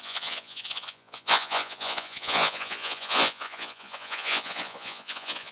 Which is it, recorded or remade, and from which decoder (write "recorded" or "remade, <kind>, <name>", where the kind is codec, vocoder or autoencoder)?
remade, vocoder, Vocos